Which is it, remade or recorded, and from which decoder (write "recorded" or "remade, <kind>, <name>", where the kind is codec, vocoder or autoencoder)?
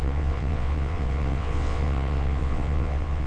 remade, vocoder, WaveNeXt